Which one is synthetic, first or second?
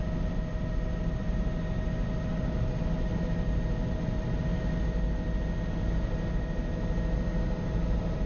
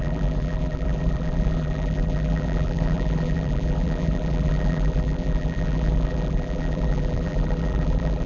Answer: second